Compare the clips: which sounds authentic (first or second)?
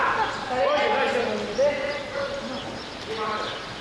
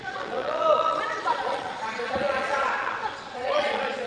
first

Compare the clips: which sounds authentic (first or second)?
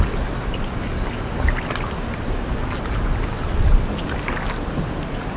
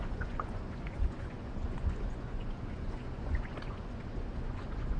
first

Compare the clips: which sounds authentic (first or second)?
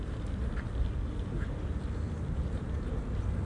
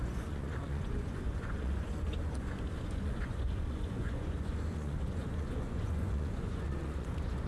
first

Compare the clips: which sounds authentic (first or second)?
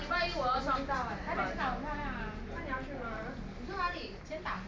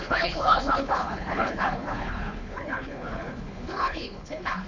first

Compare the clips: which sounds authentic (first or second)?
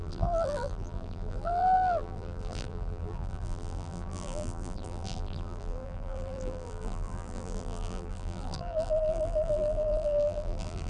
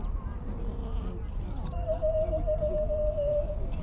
second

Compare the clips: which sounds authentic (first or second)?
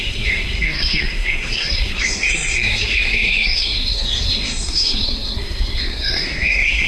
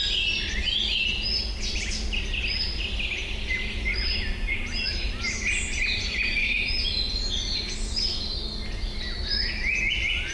second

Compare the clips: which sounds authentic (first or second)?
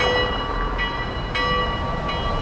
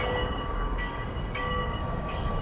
first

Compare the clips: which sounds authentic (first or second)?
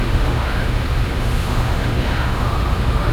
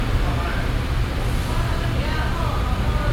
second